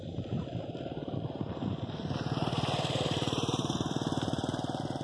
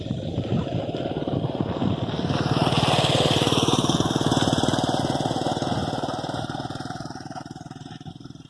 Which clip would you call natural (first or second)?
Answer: second